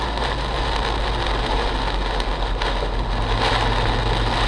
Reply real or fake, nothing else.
real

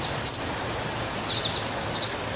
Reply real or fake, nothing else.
real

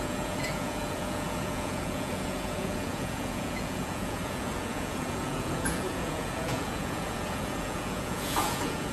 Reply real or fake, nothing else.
fake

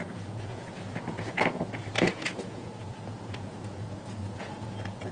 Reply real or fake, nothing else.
fake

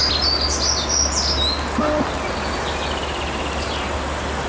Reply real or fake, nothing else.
real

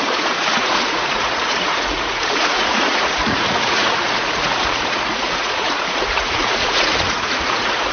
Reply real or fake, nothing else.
fake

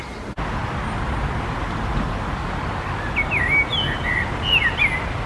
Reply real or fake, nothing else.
real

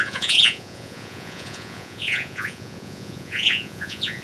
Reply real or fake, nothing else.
fake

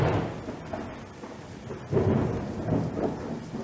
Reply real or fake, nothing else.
real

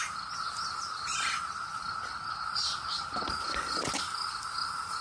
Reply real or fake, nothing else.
real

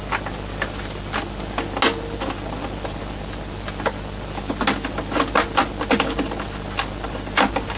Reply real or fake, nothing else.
real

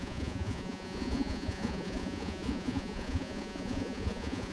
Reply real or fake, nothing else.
fake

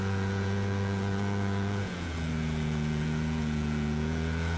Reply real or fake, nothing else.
fake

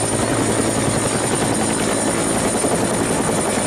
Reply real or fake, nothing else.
real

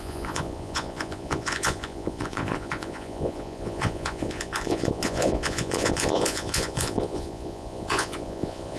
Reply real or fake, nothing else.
fake